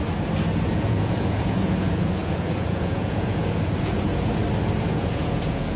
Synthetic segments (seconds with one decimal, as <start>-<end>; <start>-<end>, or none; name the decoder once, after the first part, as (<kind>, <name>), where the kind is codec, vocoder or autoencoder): 0.6-4.4 (vocoder, Vocos); 4.9-5.8

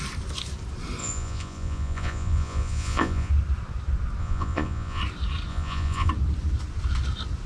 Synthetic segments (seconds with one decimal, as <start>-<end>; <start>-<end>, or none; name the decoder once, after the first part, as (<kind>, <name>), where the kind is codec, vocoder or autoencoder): 1.0-3.3 (vocoder, Vocos); 4.2-5.0; 5.5-6.1

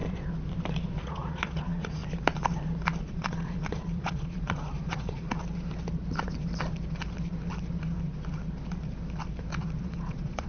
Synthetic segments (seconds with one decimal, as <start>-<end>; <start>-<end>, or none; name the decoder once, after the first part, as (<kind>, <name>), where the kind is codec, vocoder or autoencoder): 1.0-2.0 (vocoder, Vocos); 3.0-5.3; 9.8-10.5

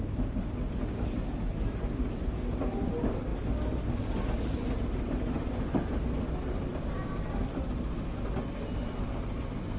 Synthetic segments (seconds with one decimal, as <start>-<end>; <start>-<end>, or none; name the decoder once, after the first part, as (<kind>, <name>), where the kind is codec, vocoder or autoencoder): none